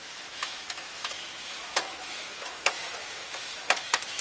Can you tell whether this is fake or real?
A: fake